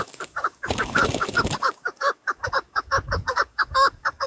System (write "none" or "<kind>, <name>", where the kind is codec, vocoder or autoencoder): codec, DAC